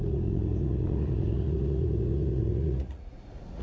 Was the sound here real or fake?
fake